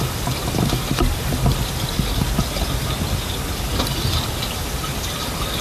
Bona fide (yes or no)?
yes